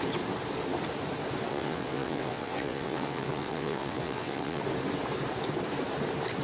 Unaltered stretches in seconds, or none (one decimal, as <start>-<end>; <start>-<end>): 0.0-1.5; 4.6-6.4

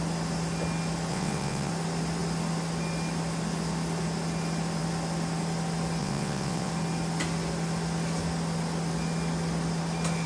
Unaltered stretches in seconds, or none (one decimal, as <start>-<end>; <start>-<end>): 0.0-1.1; 1.7-6.0; 6.7-10.3

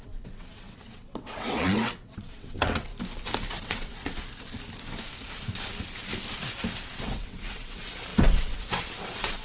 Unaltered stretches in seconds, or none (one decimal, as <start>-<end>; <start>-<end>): 2.9-3.5; 4.2-6.9